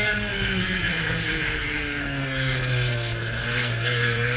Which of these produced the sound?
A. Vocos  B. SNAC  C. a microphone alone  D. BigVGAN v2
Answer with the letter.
B